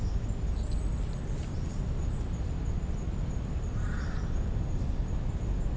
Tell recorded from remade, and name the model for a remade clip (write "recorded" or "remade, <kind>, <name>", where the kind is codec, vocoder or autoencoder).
recorded